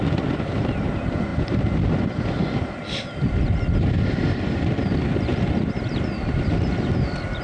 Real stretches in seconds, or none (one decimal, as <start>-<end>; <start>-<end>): 0.0-7.4